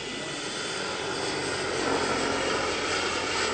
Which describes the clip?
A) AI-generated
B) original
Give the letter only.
A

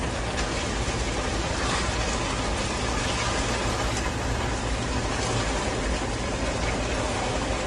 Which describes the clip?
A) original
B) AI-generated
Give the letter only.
A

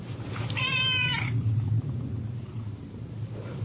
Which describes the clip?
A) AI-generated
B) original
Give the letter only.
A